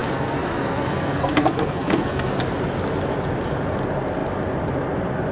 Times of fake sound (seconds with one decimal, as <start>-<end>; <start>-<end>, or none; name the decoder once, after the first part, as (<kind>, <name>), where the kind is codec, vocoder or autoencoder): 0.0-2.4 (codec, SNAC)

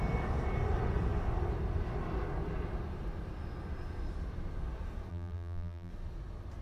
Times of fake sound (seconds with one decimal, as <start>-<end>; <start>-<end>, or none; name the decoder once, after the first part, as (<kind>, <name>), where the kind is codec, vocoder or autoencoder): 5.1-5.9 (vocoder, BigVGAN v2)

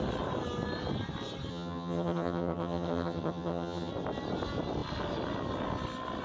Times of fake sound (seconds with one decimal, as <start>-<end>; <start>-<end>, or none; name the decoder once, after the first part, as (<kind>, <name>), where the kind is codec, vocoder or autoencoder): 1.5-3.9 (vocoder, HiFi-GAN)

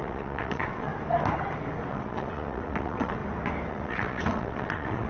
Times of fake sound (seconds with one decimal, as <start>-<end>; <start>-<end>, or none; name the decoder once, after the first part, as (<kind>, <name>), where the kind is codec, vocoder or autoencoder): 0.0-0.9 (vocoder, WaveNeXt); 1.9-3.2; 3.7-5.1

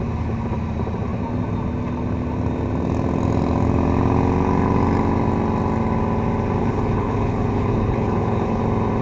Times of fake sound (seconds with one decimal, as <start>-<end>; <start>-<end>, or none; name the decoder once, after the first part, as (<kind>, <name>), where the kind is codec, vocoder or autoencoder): 6.6-8.6 (codec, HILCodec)

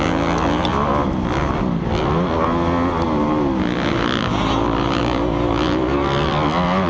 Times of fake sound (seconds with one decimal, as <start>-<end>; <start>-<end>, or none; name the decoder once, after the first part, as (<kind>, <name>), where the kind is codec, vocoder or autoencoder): none